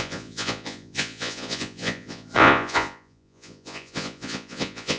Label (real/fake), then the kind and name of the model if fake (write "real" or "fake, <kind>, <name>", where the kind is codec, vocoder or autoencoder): fake, vocoder, Vocos